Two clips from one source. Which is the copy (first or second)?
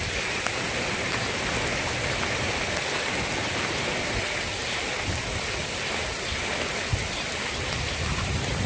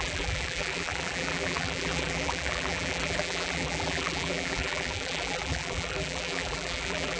second